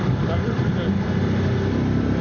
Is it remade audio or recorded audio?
recorded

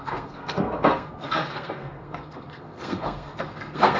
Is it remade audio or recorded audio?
remade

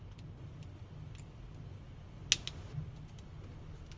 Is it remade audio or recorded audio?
recorded